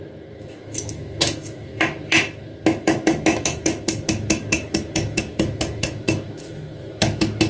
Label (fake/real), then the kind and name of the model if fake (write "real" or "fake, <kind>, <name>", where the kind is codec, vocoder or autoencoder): fake, autoencoder, DAC-VAE